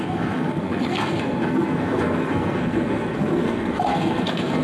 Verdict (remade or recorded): remade